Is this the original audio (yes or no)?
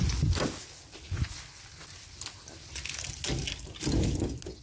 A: yes